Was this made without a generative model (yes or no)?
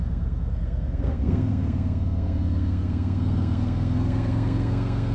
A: no